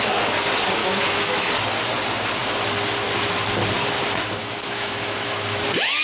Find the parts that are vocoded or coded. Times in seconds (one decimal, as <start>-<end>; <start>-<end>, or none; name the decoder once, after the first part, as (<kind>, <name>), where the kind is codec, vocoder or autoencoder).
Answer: 0.8-1.5 (autoencoder, DAC-VAE); 4.4-5.6

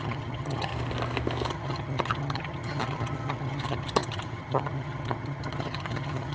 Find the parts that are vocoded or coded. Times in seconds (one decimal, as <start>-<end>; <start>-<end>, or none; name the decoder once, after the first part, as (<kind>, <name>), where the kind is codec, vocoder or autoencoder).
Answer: 0.0-0.7 (vocoder, HiFi-GAN); 1.5-6.3

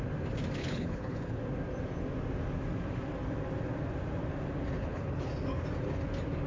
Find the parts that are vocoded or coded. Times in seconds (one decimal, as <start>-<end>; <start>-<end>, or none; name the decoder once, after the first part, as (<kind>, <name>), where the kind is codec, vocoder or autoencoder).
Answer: 0.6-1.4 (codec, HILCodec); 4.8-5.3

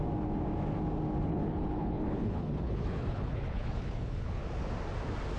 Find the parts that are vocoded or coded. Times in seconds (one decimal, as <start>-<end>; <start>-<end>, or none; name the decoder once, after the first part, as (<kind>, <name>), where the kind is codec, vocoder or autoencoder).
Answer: 1.3-4.5 (codec, HILCodec)

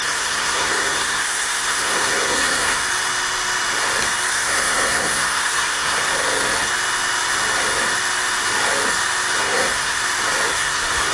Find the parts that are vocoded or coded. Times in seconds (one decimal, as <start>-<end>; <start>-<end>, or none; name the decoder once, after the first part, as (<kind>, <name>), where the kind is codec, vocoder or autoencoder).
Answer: 0.0-2.8 (codec, SNAC); 4.3-6.1; 9.4-10.0; 10.5-11.1